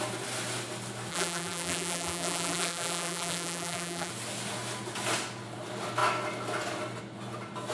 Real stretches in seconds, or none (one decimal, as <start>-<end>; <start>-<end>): 0.0-1.1; 4.1-7.7